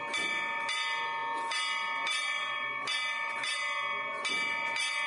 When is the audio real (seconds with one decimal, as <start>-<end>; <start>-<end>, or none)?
0.0-5.1